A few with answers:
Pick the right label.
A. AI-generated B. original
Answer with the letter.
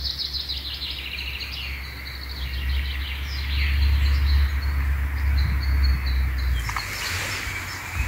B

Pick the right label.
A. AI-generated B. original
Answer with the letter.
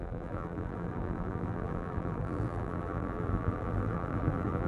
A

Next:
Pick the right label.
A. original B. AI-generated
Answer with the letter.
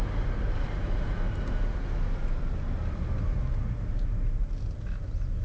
A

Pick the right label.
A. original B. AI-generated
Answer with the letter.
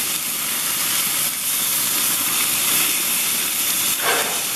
B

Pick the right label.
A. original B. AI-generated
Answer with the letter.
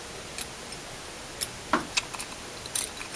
A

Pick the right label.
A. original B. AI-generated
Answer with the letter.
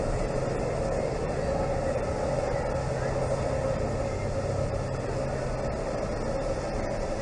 A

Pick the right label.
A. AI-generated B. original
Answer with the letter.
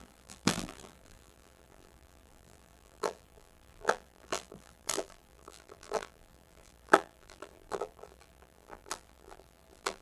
A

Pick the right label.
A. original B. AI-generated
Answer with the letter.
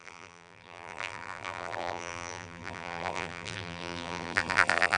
B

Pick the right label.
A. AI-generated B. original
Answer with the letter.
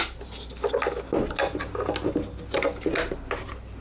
B